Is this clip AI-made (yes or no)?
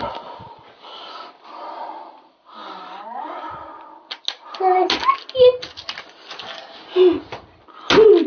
no